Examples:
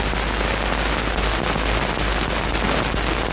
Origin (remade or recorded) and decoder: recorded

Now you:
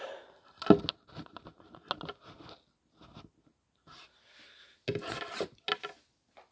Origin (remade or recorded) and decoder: recorded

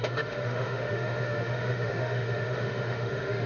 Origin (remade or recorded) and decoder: remade, autoencoder, DAC-VAE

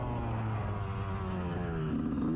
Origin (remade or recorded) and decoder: recorded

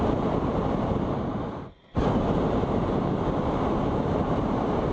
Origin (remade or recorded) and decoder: remade, vocoder, BigVGAN v2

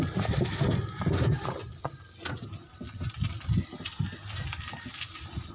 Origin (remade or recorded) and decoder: recorded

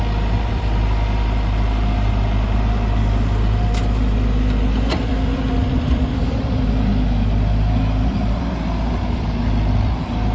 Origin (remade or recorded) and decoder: remade, vocoder, BigVGAN v2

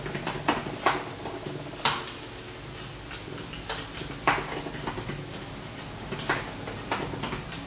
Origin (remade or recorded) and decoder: recorded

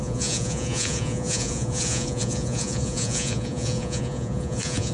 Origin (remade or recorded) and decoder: remade, vocoder, Vocos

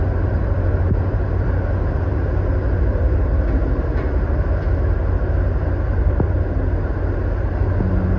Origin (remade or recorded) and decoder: recorded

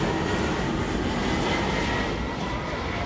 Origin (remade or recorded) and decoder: remade, vocoder, BigVGAN v2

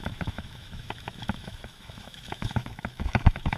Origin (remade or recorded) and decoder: remade, autoencoder, DAC-VAE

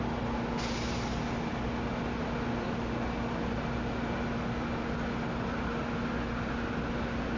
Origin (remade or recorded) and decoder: recorded